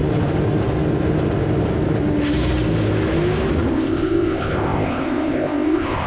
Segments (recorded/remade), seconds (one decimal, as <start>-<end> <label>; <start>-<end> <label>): 0.0-3.7 recorded; 3.7-6.1 remade